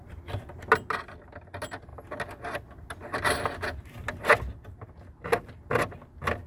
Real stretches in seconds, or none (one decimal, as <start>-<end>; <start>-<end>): 0.0-6.5